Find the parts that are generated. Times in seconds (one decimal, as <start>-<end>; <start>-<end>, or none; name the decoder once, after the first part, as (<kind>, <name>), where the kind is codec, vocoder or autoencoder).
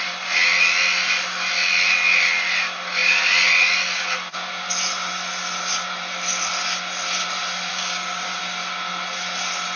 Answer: 7.7-8.4 (codec, DAC)